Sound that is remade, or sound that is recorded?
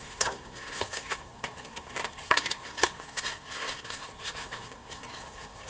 remade